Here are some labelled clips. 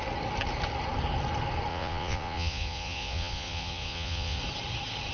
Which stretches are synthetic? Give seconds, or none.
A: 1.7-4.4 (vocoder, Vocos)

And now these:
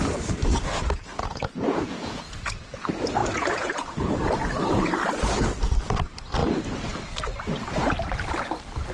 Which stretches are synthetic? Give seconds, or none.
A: 1.1-2.6 (vocoder, Vocos); 3.2-4.1

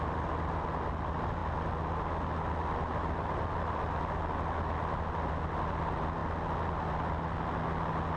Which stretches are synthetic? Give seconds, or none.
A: none

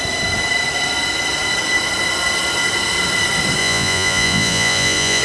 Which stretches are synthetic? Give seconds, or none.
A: 3.6-5.2 (vocoder, Vocos)

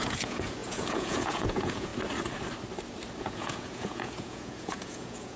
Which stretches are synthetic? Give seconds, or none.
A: 0.0-1.9 (vocoder, Vocos); 3.2-5.4

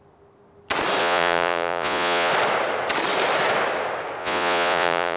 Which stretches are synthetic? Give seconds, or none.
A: 1.0-2.3 (vocoder, Vocos); 4.2-5.2

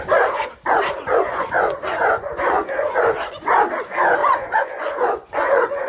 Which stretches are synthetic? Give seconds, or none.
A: 1.1-3.5 (vocoder, Vocos); 4.2-5.9

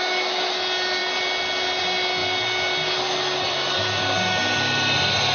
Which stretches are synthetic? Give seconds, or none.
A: none